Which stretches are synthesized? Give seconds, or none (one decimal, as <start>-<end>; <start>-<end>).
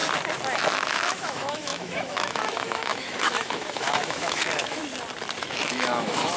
1.0-4.8; 5.4-6.4